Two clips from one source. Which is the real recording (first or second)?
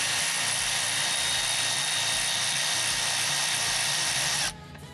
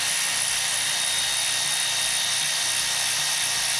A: second